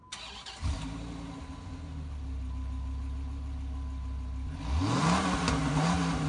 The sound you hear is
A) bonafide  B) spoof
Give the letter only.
A